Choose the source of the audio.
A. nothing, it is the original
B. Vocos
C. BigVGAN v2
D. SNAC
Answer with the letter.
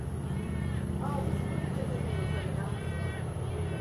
C